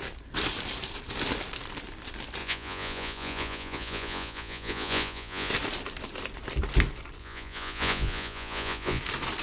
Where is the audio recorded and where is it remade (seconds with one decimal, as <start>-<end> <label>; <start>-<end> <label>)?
0.0-2.4 recorded; 2.4-5.5 remade; 5.5-7.2 recorded; 7.2-9.0 remade; 9.0-9.4 recorded